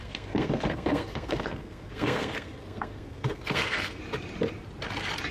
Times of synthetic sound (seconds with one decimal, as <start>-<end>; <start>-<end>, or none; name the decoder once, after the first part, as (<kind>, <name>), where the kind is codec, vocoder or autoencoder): 0.0-4.0 (codec, SNAC)